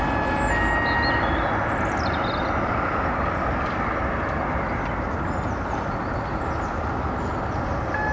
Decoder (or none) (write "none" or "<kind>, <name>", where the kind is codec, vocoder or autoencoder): none